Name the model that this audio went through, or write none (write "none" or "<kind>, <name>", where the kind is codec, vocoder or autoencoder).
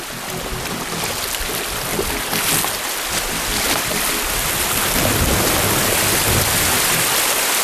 none